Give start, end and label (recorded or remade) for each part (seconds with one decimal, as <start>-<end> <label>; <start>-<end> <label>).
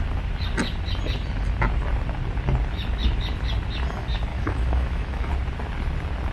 0.0-4.3 recorded; 4.3-5.3 remade; 5.3-6.3 recorded